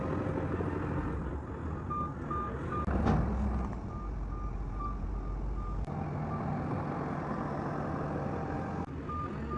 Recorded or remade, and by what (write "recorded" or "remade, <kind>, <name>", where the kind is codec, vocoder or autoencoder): recorded